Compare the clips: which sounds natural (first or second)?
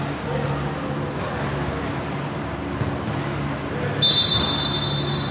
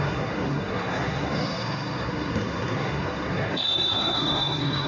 first